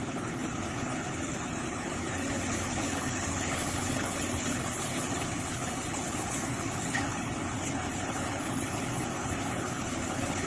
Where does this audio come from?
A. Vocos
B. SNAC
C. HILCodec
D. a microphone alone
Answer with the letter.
C